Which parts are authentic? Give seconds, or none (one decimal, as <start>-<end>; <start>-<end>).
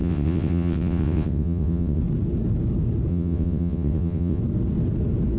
2.0-3.1; 4.4-5.4